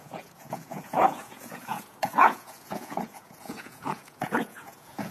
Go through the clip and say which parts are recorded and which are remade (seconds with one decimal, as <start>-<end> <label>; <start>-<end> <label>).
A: 0.0-5.1 remade